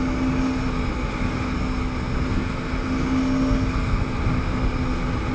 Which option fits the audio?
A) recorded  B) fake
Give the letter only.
A